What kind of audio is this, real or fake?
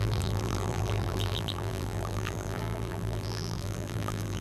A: fake